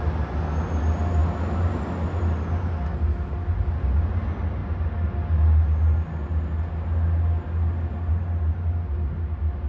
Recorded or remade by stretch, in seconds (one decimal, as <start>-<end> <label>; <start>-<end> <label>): 0.0-9.7 recorded